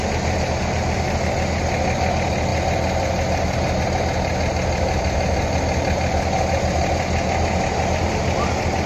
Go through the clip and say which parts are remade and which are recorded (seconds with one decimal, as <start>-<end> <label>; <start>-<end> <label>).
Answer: 0.0-8.9 recorded